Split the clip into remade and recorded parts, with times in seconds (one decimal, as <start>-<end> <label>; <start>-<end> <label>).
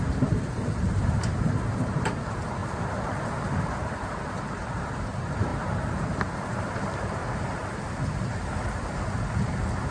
0.0-5.5 remade; 5.5-6.1 recorded; 6.1-7.2 remade; 7.2-9.9 recorded